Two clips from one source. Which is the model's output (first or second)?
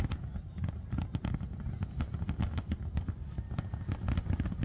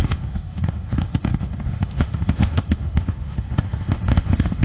second